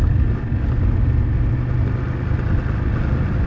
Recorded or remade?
recorded